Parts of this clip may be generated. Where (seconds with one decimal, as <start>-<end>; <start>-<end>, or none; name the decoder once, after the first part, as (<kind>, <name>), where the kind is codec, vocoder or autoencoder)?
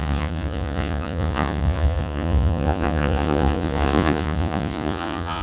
0.0-5.4 (vocoder, Vocos)